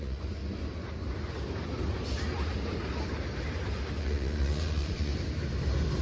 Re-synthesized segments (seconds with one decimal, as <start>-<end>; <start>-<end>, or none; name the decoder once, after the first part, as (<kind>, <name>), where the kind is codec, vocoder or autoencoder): 0.0-0.4 (vocoder, Vocos); 4.0-5.1